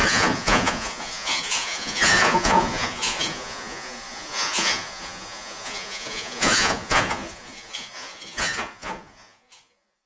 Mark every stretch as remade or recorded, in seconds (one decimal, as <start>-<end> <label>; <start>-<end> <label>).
0.0-10.1 remade